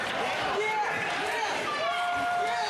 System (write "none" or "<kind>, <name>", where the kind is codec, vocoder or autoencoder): vocoder, BigVGAN v2